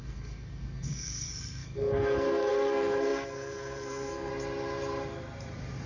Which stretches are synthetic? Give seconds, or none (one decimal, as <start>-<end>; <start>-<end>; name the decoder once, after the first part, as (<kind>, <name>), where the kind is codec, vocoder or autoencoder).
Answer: 0.0-4.3 (codec, SNAC)